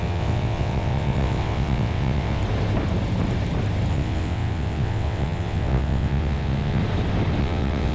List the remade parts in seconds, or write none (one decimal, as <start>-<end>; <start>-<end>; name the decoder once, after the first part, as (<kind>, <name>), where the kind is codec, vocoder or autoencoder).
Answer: 0.0-2.4 (vocoder, WaveNeXt); 3.9-6.8; 7.4-7.9